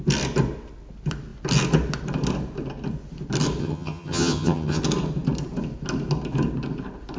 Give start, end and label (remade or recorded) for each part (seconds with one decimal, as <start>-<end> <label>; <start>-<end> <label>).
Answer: 0.0-3.6 recorded; 3.6-4.8 remade; 4.8-7.2 recorded